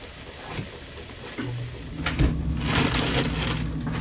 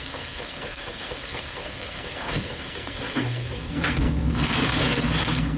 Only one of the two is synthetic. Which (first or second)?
second